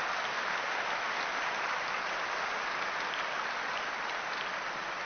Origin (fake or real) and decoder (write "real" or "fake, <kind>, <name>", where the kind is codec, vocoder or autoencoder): real